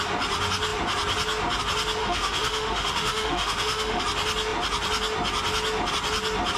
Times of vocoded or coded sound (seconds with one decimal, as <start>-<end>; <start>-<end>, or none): 2.0-4.0